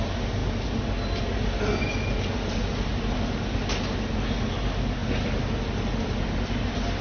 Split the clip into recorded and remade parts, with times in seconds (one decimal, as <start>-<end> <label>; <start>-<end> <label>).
0.0-7.0 recorded